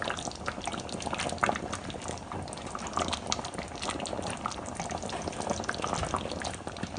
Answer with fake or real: real